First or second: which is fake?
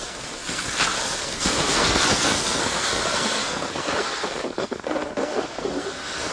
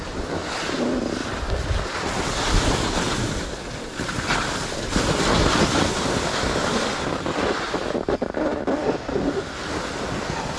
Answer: first